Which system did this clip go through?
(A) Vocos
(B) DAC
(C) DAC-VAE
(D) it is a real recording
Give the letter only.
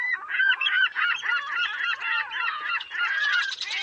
A